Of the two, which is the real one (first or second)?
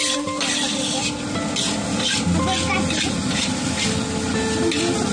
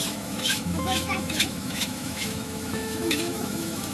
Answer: first